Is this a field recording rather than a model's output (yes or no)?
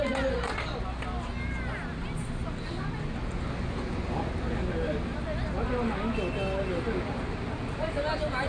yes